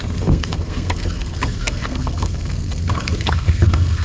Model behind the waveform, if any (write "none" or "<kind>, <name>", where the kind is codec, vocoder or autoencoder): codec, SNAC